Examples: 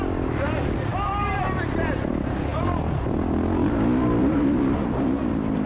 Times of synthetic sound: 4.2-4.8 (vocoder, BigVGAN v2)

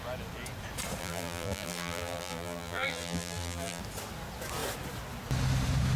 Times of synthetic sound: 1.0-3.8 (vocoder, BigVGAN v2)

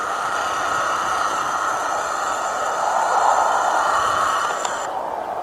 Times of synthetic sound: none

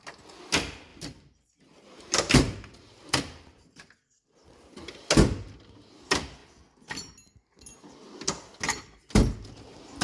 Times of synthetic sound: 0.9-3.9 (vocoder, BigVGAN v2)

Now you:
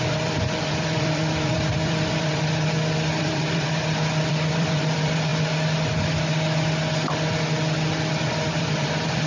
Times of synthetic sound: 0.0-5.3 (vocoder, BigVGAN v2); 8.5-9.3

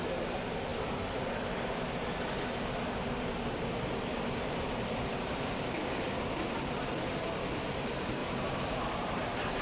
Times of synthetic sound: 4.1-5.9 (vocoder, BigVGAN v2); 8.2-9.6